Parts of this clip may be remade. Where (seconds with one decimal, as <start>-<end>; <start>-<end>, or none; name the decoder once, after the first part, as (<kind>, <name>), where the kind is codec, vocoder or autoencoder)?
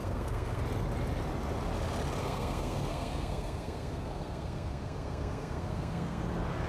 0.0-0.6 (codec, SNAC); 2.2-6.2